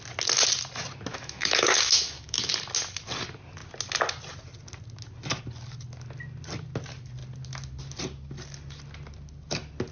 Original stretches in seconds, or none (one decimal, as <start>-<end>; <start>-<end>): 0.0-1.1; 2.5-9.9